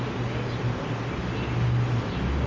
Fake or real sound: real